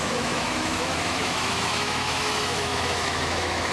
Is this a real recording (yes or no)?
no